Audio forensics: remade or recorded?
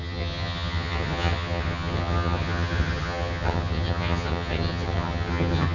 remade